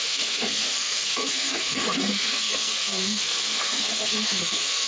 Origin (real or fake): fake